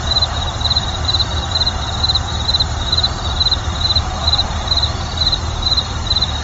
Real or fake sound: fake